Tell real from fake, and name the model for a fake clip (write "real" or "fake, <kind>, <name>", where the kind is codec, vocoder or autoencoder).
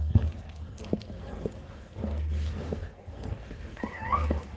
fake, codec, SNAC